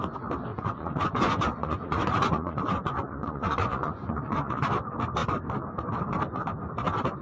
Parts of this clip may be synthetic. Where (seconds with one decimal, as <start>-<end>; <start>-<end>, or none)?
0.5-4.7